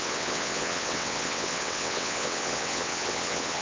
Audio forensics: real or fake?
fake